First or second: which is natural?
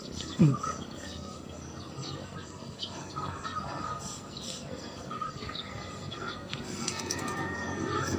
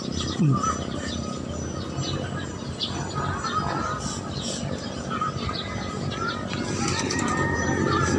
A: second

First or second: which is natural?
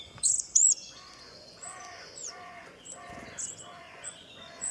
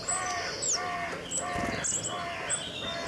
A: second